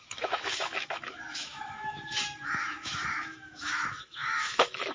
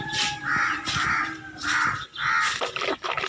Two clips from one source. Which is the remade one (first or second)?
first